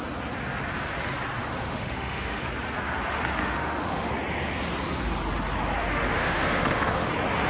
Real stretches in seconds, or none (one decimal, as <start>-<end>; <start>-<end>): 0.0-1.4; 2.4-3.4; 4.1-5.8; 7.1-7.5